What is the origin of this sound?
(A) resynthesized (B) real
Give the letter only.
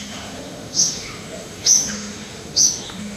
A